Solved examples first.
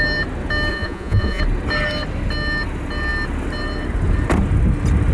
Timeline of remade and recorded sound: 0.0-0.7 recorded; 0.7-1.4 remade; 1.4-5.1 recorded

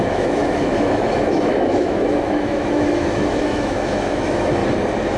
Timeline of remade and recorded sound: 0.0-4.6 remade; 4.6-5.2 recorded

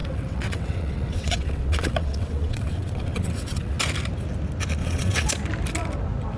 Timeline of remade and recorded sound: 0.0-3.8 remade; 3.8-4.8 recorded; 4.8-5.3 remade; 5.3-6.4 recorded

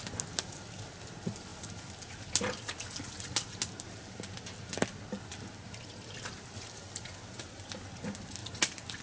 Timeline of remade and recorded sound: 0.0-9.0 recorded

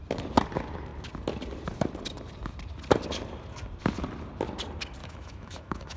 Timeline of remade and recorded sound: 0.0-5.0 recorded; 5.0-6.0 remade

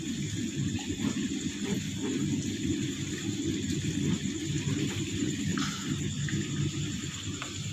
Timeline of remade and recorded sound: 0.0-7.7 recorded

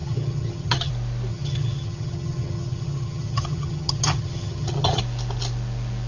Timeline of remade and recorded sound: 0.0-0.9 remade; 0.9-1.3 recorded; 1.3-5.0 remade; 5.0-6.1 recorded